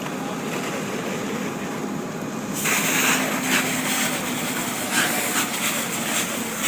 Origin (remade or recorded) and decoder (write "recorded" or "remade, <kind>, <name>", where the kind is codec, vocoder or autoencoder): recorded